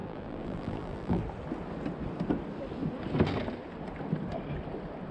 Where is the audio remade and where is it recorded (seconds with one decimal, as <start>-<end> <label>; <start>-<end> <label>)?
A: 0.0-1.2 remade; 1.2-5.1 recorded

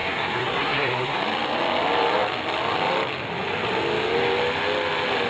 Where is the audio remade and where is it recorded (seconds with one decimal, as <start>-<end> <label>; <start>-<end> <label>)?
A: 0.0-1.2 remade; 1.2-5.3 recorded

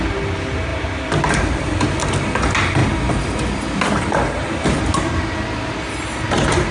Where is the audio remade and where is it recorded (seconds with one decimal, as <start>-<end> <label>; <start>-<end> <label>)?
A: 0.0-0.7 recorded; 0.7-1.2 remade; 1.2-6.7 recorded

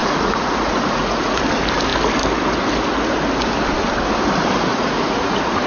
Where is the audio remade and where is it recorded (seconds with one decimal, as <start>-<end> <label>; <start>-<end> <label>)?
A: 0.0-1.4 remade; 1.4-4.7 recorded; 4.7-5.7 remade